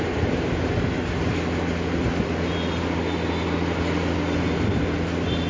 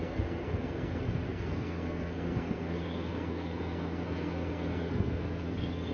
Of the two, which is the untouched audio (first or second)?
first